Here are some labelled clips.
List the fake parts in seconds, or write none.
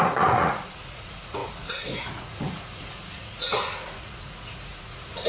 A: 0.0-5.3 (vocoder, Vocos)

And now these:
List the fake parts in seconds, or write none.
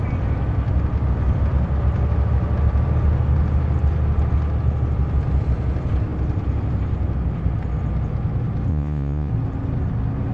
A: 8.7-9.3 (vocoder, Vocos)